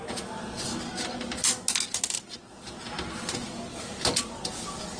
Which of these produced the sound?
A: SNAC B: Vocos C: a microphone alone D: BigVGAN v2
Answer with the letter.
C